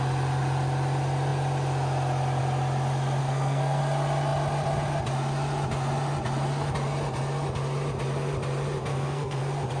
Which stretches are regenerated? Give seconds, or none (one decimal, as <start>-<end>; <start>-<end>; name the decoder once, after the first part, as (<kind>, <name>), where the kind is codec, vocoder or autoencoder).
3.2-3.8 (codec, SNAC); 8.9-9.4